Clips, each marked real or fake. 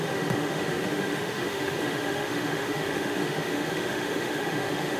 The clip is fake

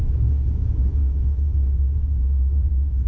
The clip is fake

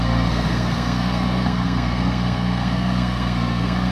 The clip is fake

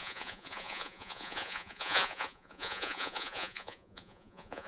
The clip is fake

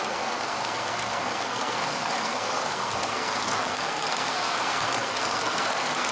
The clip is fake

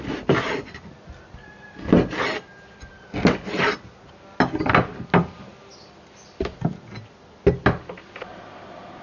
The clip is real